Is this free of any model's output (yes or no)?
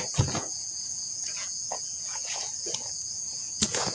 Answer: no